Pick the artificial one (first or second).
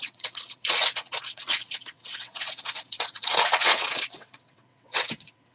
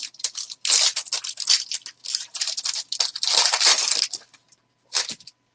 first